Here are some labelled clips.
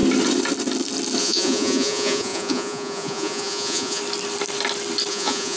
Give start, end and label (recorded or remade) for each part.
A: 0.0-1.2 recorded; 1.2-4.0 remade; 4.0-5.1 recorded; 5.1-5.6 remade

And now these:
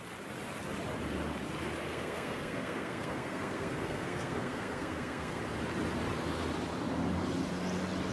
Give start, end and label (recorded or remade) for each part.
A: 0.0-1.9 recorded; 1.9-5.4 remade; 5.4-8.1 recorded

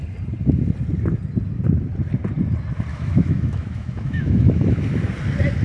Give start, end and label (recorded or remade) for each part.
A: 0.0-2.9 recorded; 2.9-4.8 remade; 4.8-5.6 recorded

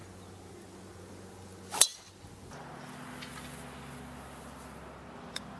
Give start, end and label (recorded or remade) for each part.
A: 0.0-5.6 recorded

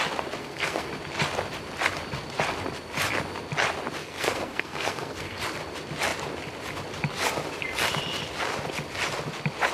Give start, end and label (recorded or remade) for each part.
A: 0.0-0.4 recorded; 0.4-0.9 remade; 0.9-4.0 recorded; 4.0-5.4 remade; 5.4-9.7 recorded